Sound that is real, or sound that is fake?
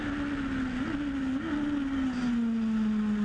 real